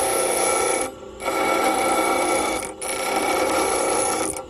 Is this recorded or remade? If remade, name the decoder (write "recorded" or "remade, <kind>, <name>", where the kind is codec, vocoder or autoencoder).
recorded